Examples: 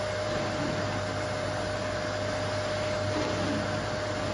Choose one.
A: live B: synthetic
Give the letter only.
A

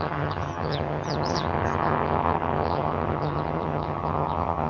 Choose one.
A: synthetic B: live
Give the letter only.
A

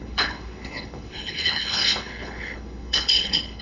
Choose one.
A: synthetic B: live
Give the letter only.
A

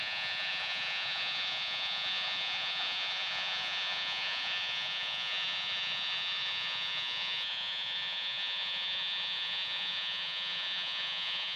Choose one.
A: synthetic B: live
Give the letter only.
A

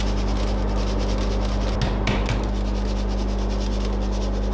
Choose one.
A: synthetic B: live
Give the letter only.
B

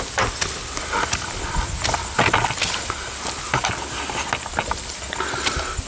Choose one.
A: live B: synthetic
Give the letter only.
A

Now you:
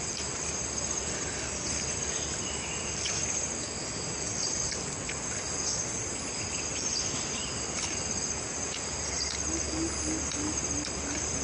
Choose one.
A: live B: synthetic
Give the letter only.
A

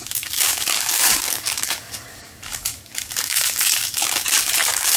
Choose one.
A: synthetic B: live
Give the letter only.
A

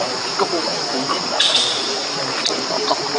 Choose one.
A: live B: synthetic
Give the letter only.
A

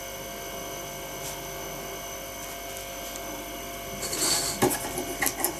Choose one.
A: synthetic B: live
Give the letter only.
B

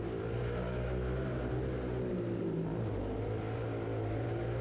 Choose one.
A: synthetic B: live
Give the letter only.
B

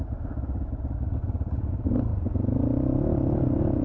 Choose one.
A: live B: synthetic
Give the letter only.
A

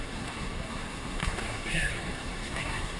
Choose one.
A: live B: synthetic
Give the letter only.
B